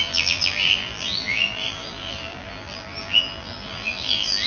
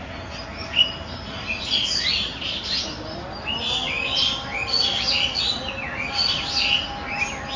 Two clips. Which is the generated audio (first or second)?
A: first